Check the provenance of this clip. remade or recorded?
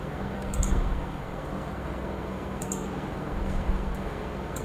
remade